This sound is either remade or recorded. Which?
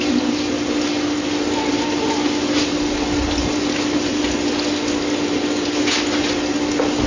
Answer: recorded